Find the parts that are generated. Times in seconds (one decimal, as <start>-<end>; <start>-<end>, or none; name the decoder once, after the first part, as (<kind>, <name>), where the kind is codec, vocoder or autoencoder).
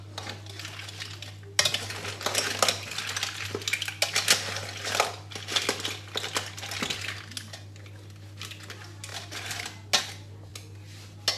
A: none